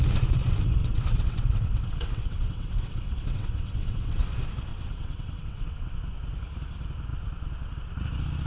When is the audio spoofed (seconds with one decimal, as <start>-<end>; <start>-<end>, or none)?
0.8-4.3; 4.7-5.9